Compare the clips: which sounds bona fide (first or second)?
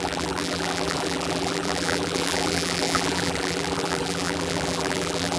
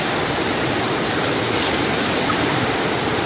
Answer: second